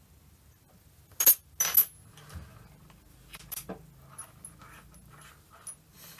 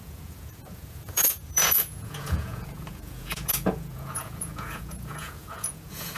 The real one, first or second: first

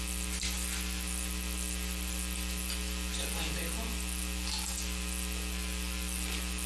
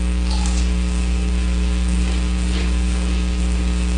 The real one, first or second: first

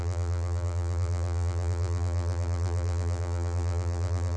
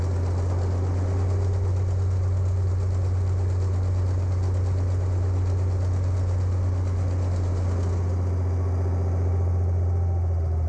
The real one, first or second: second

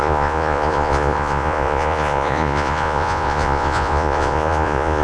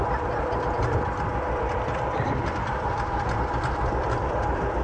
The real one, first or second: second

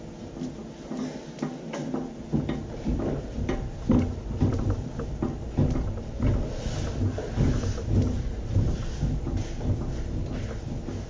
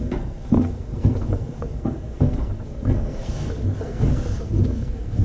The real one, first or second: first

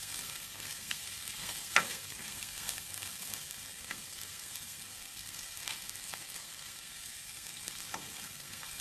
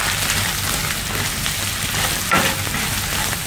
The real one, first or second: second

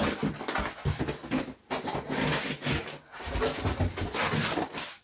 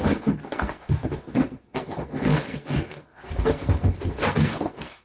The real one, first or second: first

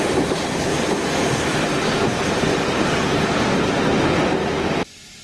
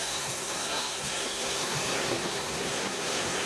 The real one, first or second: first